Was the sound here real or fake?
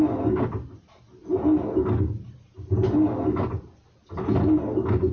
real